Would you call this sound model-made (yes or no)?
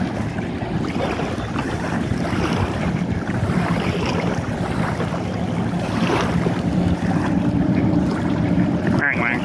yes